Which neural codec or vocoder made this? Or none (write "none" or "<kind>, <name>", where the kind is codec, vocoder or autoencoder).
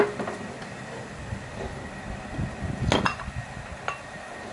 none